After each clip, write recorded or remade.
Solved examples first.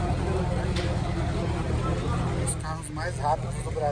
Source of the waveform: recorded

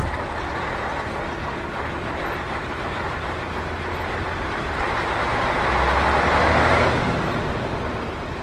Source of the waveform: recorded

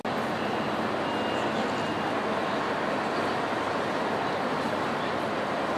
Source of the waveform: recorded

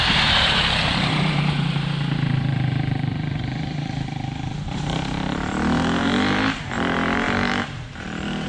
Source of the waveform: remade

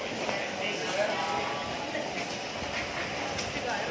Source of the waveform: recorded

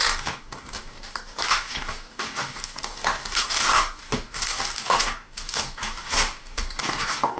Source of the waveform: remade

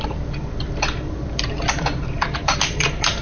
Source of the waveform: remade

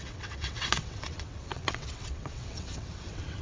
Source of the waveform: remade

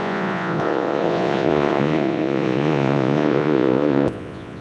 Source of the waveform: remade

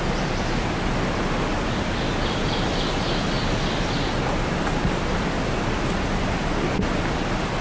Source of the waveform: recorded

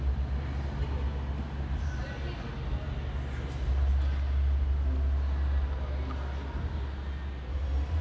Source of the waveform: recorded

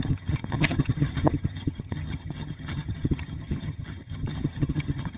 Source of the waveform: remade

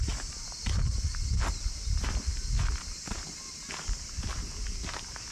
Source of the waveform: recorded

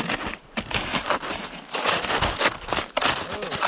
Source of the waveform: recorded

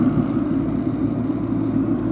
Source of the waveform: recorded